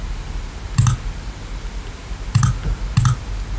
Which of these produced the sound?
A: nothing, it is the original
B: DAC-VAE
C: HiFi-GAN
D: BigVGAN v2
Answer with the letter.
A